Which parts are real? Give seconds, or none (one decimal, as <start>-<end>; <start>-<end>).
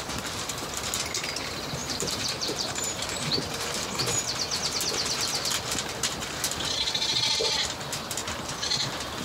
0.0-1.8; 4.0-9.2